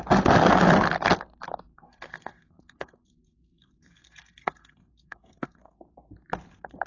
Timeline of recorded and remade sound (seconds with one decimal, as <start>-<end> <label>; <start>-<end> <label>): 0.0-1.7 recorded; 1.7-5.8 remade; 5.8-6.9 recorded

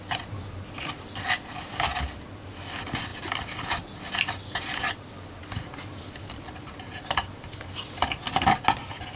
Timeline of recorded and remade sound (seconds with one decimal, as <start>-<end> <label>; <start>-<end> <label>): 0.0-9.2 recorded

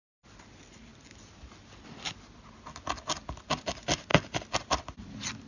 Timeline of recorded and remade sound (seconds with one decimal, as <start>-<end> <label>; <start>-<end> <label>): 0.0-5.5 recorded

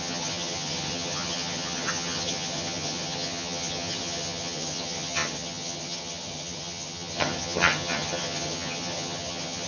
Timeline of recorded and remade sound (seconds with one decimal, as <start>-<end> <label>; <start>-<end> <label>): 0.0-9.7 remade

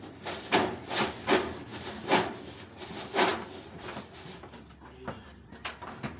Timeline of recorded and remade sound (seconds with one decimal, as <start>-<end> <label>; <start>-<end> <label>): 0.0-1.7 remade; 1.7-2.3 recorded; 2.3-6.2 remade